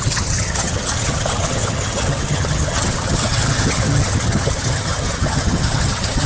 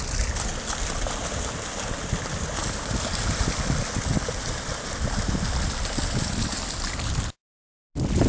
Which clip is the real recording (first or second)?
second